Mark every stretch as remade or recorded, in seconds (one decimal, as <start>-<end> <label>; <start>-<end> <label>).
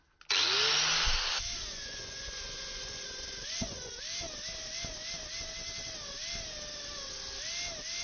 0.0-1.7 recorded; 1.7-3.9 remade; 3.9-8.0 recorded